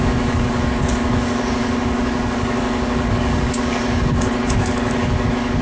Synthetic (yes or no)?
yes